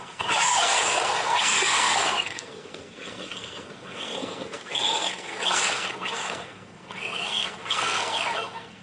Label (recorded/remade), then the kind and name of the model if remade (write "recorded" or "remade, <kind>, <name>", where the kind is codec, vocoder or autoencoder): remade, codec, SNAC